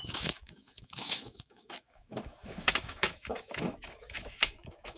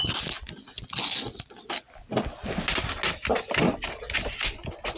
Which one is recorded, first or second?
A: second